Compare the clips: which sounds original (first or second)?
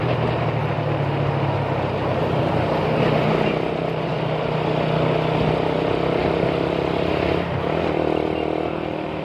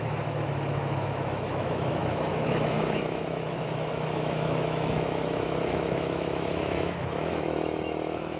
first